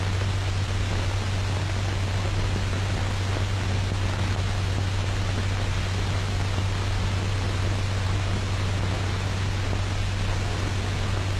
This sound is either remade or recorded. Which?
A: recorded